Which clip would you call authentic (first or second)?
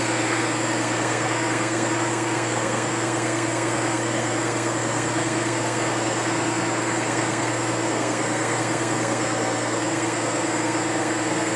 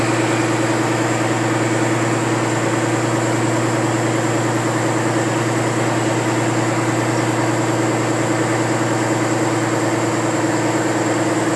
second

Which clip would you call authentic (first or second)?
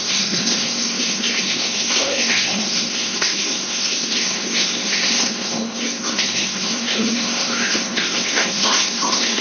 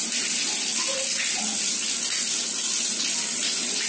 second